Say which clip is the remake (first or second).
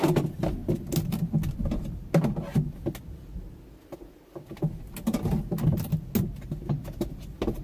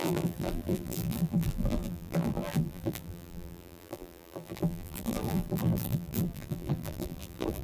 second